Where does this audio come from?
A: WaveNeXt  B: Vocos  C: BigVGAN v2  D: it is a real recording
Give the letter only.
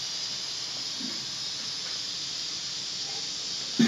D